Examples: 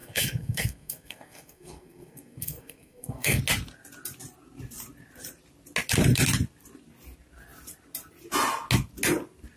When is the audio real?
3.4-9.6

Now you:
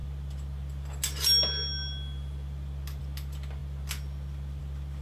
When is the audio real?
0.0-5.0

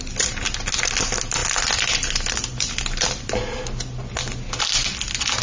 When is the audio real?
0.0-5.4

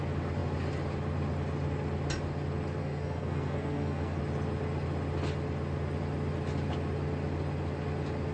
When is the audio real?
0.0-2.8; 4.2-8.3

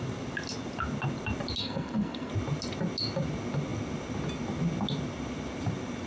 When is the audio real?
0.0-1.6; 2.3-6.1

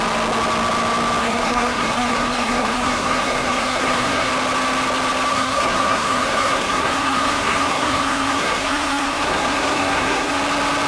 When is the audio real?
0.0-1.2; 4.3-5.3; 10.4-10.9

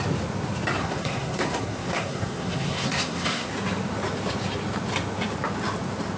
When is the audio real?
0.0-0.8; 3.5-6.2